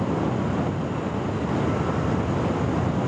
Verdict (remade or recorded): recorded